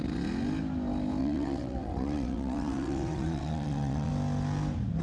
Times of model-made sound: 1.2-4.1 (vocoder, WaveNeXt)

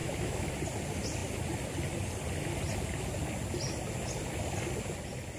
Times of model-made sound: 0.0-0.5 (autoencoder, DAC-VAE)